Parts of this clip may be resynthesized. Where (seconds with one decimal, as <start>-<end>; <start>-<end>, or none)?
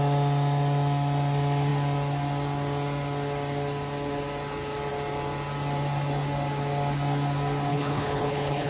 7.7-8.7